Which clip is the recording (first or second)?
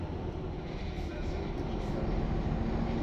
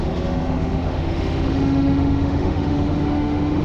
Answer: first